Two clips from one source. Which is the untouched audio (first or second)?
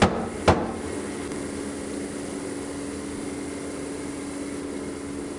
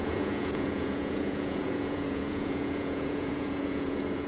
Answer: first